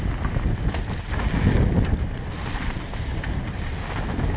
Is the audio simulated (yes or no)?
no